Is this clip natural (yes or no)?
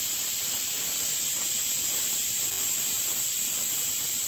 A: no